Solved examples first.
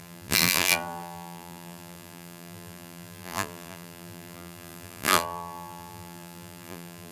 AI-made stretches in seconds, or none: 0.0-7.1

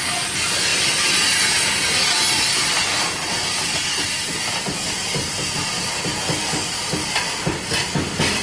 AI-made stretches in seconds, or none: none

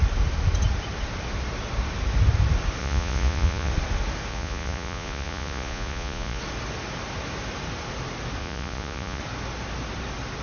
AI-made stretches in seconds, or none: 2.8-3.7; 4.3-6.4; 8.4-9.2

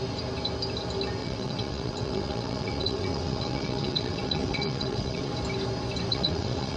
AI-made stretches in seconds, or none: 1.2-5.3; 6.1-6.8